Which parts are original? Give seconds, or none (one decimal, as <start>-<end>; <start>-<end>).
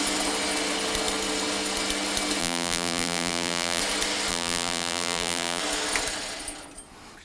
0.0-2.4; 3.8-4.3; 5.6-7.2